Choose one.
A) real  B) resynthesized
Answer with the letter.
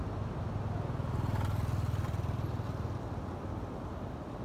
A